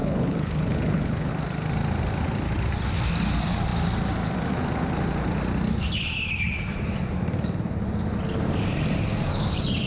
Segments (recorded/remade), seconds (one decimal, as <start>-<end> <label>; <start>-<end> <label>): 0.0-1.3 remade; 1.3-9.9 recorded